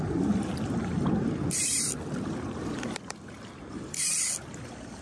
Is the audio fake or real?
fake